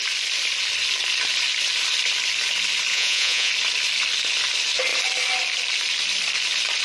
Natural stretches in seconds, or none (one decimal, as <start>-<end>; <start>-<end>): 0.0-2.9; 3.5-6.8